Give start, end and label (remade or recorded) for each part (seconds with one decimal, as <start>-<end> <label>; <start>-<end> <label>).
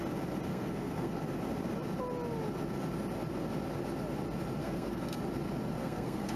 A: 0.0-0.5 recorded; 0.5-1.2 remade; 1.2-4.6 recorded; 4.6-5.2 remade; 5.2-5.8 recorded; 5.8-6.4 remade